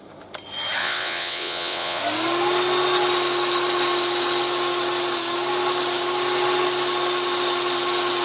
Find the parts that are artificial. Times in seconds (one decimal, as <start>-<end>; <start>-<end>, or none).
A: 0.8-2.0